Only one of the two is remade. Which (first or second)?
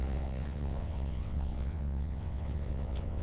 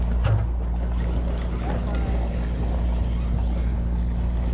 first